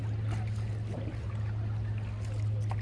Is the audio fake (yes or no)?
no